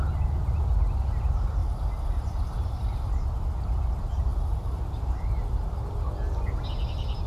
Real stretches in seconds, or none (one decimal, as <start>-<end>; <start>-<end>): 0.0-1.6; 3.1-4.3; 4.8-7.3

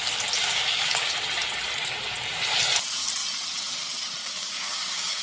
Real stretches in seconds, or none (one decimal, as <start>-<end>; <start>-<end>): 0.0-0.4; 1.1-4.2